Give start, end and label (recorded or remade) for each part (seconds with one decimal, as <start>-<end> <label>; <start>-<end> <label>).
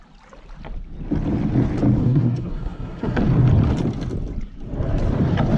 0.0-2.0 recorded; 2.0-3.2 remade; 3.2-5.6 recorded